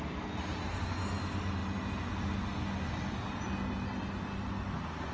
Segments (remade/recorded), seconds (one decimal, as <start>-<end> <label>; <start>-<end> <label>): 0.0-5.1 recorded